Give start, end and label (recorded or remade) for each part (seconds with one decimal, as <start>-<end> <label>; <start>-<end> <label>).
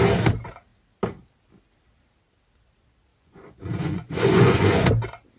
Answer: 0.0-3.1 recorded; 3.1-4.9 remade; 4.9-5.4 recorded